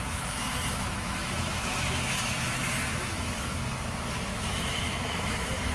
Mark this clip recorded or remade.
remade